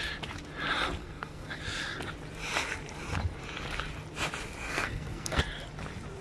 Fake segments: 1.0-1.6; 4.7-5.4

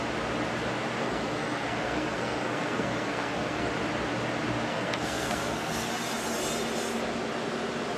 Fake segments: 1.0-3.7; 4.7-5.9

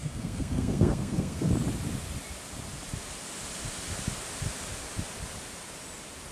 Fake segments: 0.0-1.5

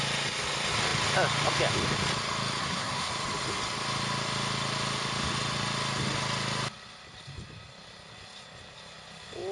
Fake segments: 2.6-3.1

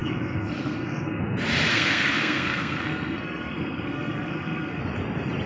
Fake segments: 0.0-1.2; 1.7-4.8